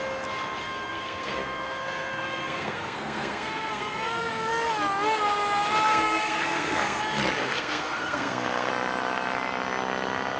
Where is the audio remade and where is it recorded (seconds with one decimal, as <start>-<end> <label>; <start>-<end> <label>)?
0.0-0.6 recorded; 0.6-4.7 remade; 4.7-5.9 recorded; 5.9-7.0 remade; 7.0-7.4 recorded; 7.4-8.7 remade; 8.7-10.4 recorded